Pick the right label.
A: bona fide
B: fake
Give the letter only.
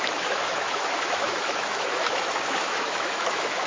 B